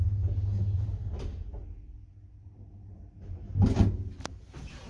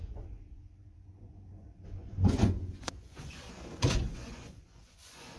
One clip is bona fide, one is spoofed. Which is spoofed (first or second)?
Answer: second